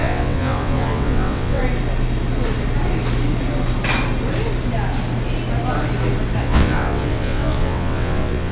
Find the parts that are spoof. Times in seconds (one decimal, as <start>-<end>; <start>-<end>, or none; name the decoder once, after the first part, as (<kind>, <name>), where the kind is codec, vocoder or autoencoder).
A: 0.0-1.6 (vocoder, WaveNeXt); 6.4-8.5